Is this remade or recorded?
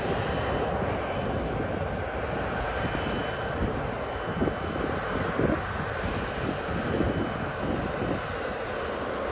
recorded